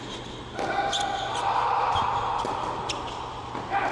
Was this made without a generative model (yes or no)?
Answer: yes